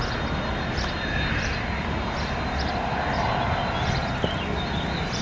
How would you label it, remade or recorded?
recorded